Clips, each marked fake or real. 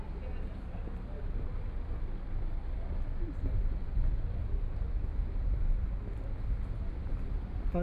real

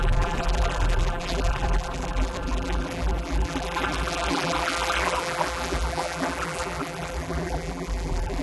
fake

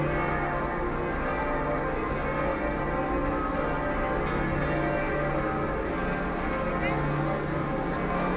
real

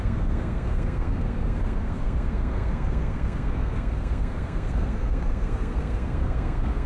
fake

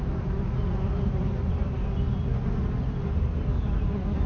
real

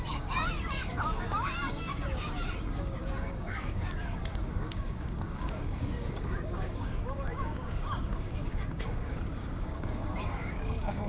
fake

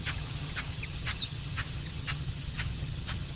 fake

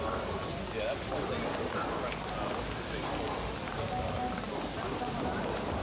real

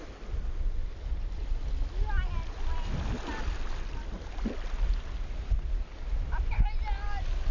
real